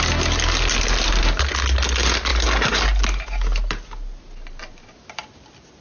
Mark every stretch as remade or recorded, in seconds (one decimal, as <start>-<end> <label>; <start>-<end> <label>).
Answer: 0.0-5.8 recorded